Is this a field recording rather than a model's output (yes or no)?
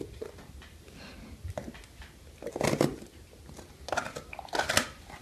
yes